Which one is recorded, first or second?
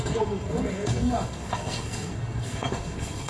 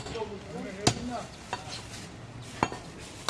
second